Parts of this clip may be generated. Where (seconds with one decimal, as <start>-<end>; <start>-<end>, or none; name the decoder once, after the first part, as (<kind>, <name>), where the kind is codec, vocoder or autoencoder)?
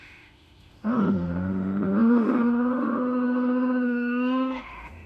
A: 0.0-5.1 (autoencoder, DAC-VAE)